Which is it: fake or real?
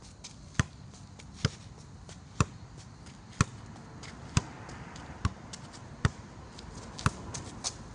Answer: real